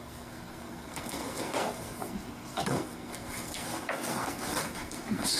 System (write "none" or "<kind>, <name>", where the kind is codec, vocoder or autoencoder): codec, SNAC